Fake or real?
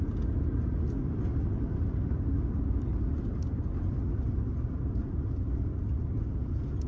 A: fake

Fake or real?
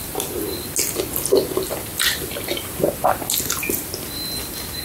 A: real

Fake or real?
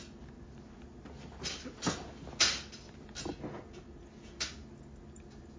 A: real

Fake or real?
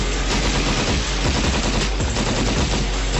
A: real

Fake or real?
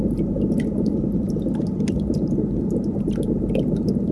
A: fake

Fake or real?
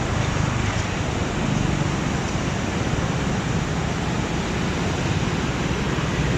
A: real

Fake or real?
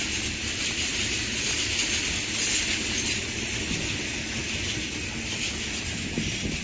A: real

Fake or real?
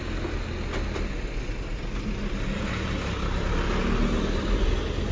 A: real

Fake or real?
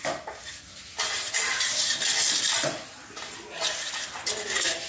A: real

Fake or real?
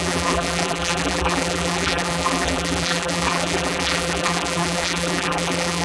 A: fake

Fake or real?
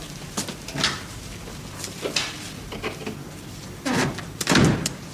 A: real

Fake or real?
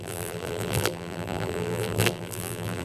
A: fake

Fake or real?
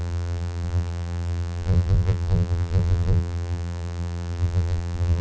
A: fake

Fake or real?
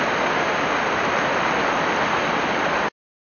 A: real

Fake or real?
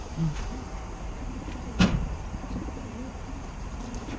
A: fake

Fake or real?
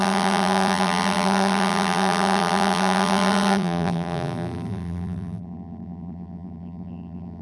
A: fake